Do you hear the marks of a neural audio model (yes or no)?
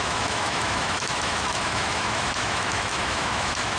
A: yes